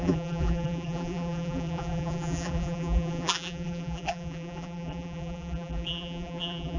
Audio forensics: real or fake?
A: fake